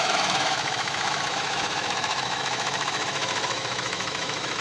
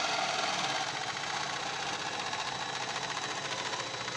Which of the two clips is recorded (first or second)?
second